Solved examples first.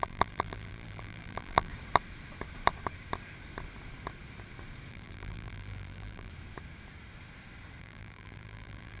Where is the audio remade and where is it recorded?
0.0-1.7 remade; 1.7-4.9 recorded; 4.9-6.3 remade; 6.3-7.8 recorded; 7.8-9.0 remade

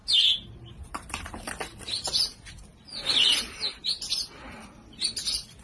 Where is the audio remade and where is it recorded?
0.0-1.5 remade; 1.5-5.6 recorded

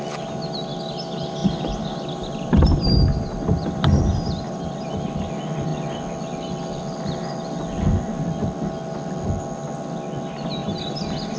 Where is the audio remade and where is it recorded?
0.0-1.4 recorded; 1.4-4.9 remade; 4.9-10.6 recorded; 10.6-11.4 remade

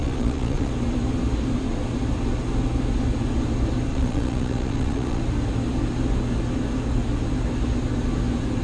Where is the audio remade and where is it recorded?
0.0-0.7 remade; 0.7-3.9 recorded; 3.9-5.2 remade; 5.2-8.6 recorded

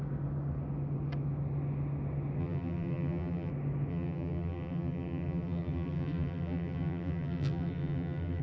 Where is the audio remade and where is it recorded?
0.0-2.4 recorded; 2.4-3.5 remade; 3.5-3.9 recorded; 3.9-8.4 remade

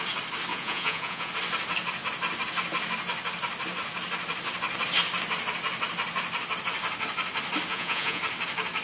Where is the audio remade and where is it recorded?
0.0-0.5 recorded; 0.5-1.3 remade; 1.3-7.7 recorded; 7.7-8.2 remade; 8.2-8.8 recorded

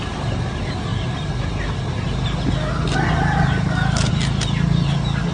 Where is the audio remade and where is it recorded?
0.0-5.3 recorded